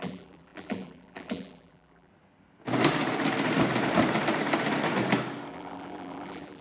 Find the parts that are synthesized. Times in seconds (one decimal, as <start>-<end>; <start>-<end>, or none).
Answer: 0.0-2.1; 5.5-6.6